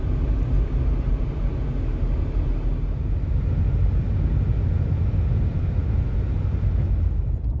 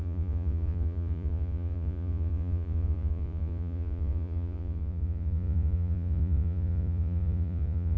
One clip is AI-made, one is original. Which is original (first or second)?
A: first